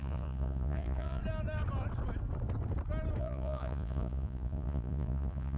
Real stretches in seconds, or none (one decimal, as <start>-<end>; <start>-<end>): 1.2-3.2